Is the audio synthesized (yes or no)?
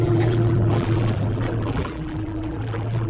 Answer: yes